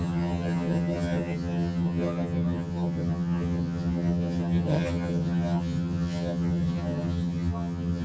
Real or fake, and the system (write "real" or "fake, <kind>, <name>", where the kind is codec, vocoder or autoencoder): fake, vocoder, HiFi-GAN